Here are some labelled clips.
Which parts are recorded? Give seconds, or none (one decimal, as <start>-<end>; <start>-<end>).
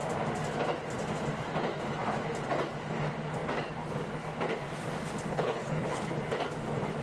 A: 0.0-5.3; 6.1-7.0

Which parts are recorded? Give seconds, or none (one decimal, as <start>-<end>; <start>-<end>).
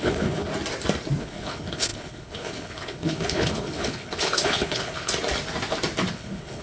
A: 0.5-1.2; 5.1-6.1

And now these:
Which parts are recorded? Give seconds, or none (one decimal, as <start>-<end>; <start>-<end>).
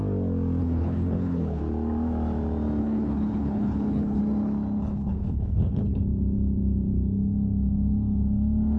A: 0.0-0.6; 1.6-2.8; 4.2-4.9; 6.0-8.8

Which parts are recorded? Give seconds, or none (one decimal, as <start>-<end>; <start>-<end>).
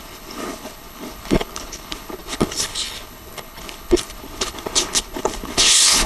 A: none